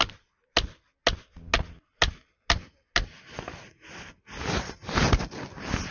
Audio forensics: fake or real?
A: real